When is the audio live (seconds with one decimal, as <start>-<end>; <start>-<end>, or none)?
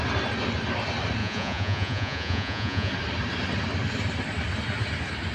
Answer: 0.0-1.2; 2.9-5.3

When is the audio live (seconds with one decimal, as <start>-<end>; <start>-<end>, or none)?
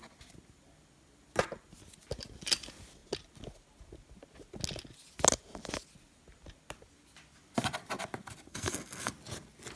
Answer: 0.0-8.5; 9.1-9.8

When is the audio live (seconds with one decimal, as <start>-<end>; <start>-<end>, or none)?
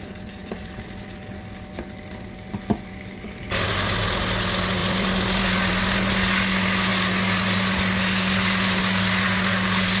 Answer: 0.0-0.4; 1.0-4.8; 5.7-10.0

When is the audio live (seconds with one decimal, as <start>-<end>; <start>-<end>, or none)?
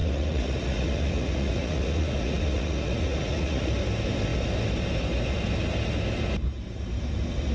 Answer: 3.7-7.5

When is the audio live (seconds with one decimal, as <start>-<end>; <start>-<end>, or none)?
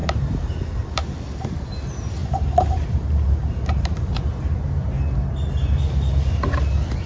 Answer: 1.0-2.2; 4.2-7.1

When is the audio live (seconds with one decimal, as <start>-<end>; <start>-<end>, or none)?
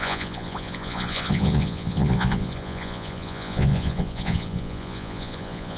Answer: none